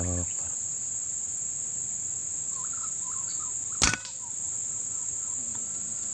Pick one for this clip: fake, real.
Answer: real